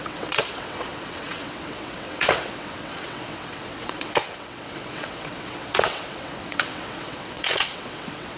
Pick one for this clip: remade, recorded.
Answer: remade